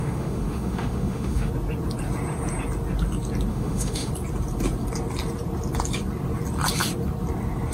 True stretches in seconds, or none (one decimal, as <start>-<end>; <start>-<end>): 1.5-3.5; 4.1-7.7